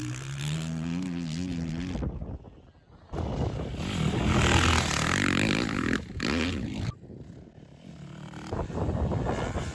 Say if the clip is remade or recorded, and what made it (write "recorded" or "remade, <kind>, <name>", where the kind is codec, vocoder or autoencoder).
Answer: recorded